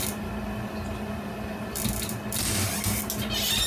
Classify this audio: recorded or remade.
recorded